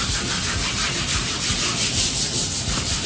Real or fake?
fake